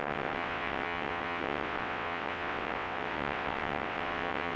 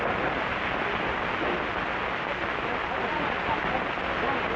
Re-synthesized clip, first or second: first